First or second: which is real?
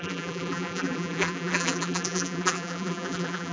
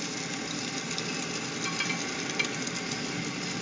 second